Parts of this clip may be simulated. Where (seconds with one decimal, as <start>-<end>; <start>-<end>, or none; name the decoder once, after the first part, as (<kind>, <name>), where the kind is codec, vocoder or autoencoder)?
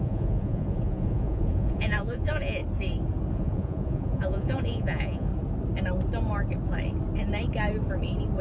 0.0-2.6 (vocoder, Vocos); 3.3-5.3